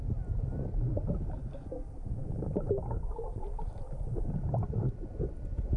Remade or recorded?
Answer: remade